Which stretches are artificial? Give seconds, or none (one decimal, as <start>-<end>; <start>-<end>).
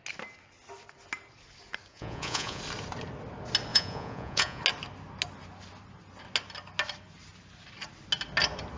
1.9-2.6; 3.7-4.6